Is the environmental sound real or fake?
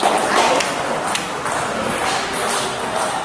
real